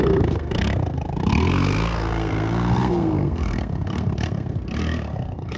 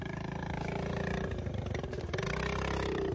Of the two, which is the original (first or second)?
second